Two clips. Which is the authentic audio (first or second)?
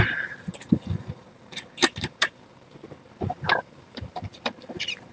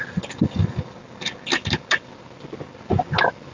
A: second